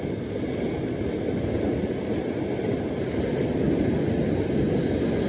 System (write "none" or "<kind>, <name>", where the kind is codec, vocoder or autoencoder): none